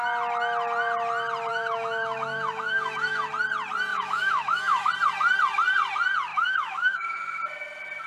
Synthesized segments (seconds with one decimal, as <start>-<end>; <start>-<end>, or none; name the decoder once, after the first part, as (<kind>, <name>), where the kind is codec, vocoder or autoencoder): 1.5-3.3 (autoencoder, DAC-VAE); 3.9-4.9; 6.3-7.4